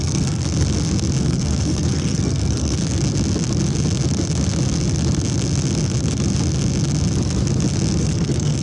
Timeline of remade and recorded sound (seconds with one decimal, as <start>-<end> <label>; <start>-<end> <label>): 0.0-0.4 remade; 0.4-1.2 recorded; 1.2-2.8 remade; 2.8-8.0 recorded; 8.0-8.6 remade